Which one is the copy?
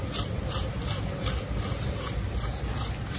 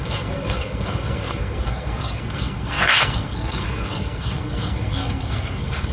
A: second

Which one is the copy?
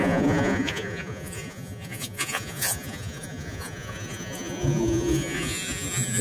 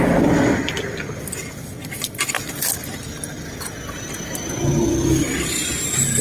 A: first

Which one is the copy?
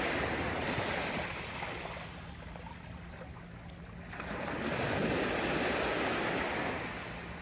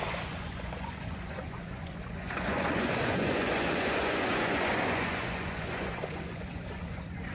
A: second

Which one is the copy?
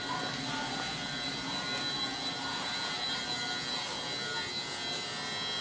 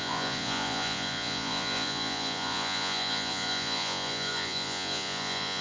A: second